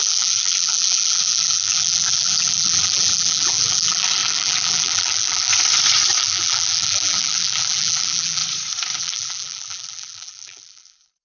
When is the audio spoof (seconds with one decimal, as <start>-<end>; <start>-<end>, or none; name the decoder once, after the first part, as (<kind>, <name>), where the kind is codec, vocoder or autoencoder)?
0.0-5.5 (vocoder, BigVGAN v2); 6.2-8.4; 9.0-11.2